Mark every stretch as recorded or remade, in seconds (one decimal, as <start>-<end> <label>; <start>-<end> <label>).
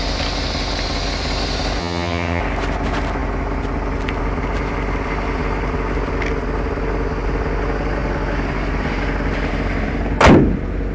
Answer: 0.0-1.8 recorded; 1.8-2.4 remade; 2.4-10.9 recorded